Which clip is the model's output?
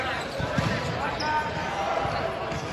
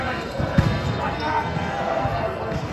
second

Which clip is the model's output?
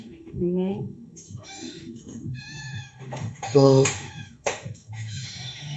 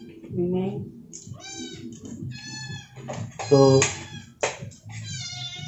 first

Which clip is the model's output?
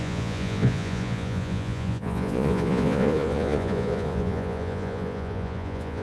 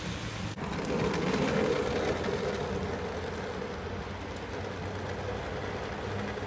first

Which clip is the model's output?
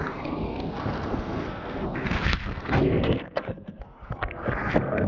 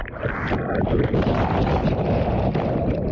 first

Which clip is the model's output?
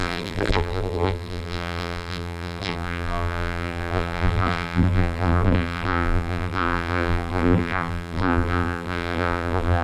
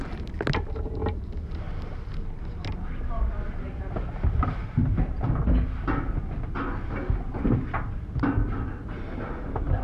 first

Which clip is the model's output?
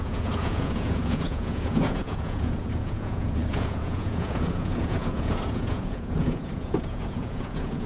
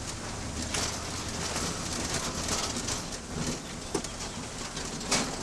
first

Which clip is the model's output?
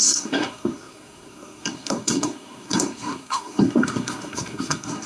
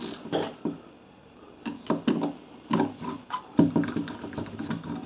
first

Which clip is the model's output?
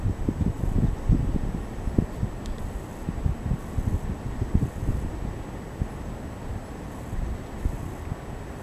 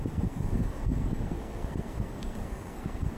second